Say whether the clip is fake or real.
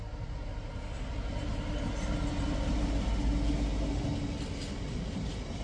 real